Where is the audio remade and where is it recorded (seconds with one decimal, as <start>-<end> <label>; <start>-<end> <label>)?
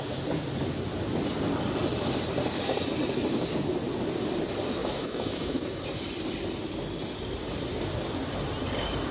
0.0-4.8 recorded; 4.8-5.8 remade; 5.8-9.1 recorded